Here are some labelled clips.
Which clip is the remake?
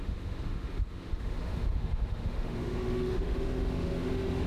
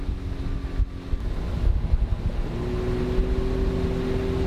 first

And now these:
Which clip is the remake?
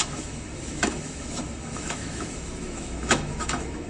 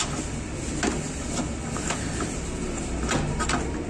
first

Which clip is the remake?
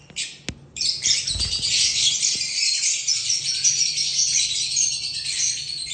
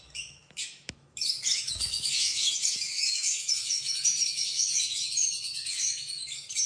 second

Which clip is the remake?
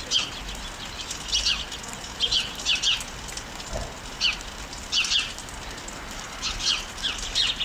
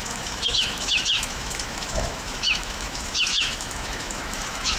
second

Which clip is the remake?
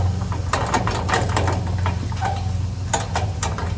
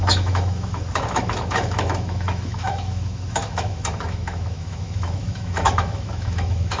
second